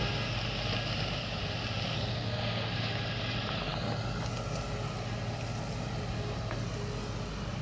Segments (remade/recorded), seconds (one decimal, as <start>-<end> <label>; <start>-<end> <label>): 0.0-2.1 recorded; 2.1-2.7 remade; 2.7-7.6 recorded